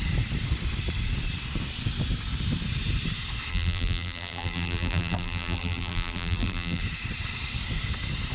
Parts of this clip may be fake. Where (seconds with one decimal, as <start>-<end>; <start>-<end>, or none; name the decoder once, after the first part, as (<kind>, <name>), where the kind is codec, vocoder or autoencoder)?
3.5-6.8 (vocoder, BigVGAN v2)